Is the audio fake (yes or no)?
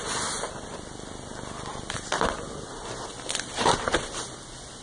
no